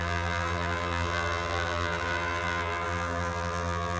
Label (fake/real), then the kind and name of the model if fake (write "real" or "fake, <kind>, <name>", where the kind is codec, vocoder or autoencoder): fake, vocoder, BigVGAN v2